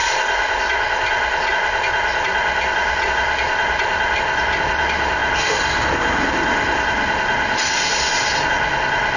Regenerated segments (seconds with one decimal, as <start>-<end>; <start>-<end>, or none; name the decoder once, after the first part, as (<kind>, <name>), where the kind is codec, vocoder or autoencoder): none